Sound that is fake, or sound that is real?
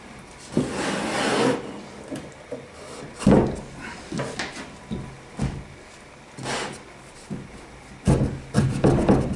real